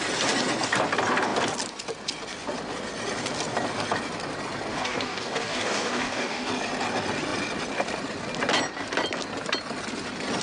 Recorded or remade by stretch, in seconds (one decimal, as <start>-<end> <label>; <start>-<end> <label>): 0.0-4.7 recorded; 4.7-6.5 remade; 6.5-10.4 recorded